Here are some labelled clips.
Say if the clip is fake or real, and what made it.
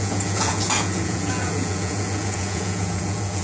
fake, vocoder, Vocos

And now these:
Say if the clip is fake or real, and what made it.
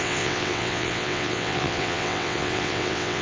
fake, vocoder, WaveNeXt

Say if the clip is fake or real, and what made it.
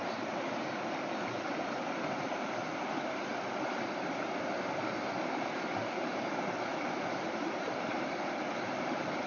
real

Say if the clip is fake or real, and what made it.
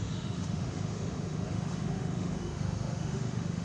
fake, autoencoder, DAC-VAE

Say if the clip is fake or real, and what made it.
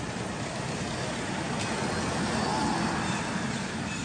real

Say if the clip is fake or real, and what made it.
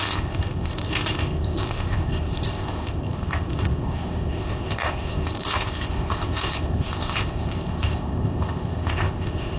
fake, codec, ZipCodec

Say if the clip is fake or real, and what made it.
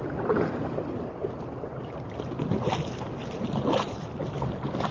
real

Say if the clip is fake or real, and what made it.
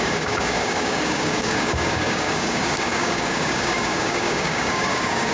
fake, codec, DAC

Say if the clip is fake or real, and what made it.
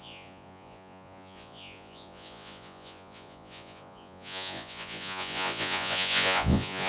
fake, vocoder, Vocos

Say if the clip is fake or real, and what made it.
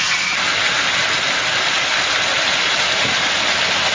real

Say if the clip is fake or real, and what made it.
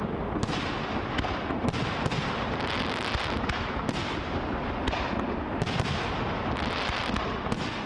real